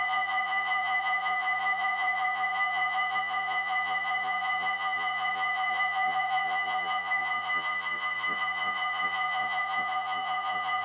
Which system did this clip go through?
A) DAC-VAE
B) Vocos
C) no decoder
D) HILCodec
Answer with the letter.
B